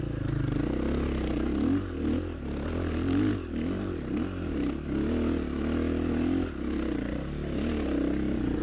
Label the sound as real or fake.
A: real